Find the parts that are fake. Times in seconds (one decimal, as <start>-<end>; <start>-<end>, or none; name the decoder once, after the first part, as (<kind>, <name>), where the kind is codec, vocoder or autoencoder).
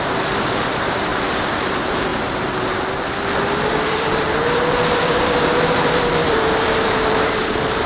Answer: 0.0-2.1 (vocoder, BigVGAN v2); 3.8-7.9